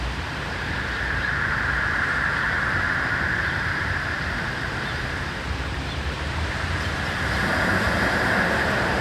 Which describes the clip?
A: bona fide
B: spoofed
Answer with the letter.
B